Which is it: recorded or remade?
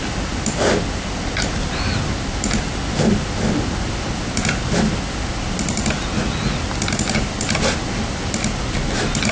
recorded